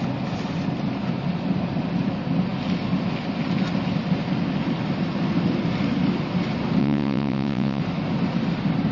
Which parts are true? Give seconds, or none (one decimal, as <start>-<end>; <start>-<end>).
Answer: 0.0-6.8; 7.8-8.9